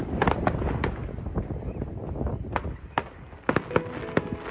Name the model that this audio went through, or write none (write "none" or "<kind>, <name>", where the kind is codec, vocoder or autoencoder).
none